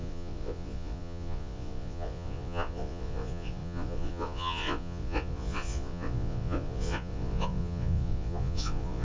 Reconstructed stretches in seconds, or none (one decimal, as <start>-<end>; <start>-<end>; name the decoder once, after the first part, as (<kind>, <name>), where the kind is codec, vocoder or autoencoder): 0.0-9.0 (vocoder, Vocos)